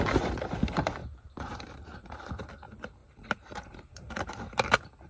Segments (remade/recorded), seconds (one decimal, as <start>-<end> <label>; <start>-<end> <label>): 0.0-1.0 recorded; 1.0-2.3 remade; 2.3-3.0 recorded; 3.0-4.3 remade; 4.3-5.1 recorded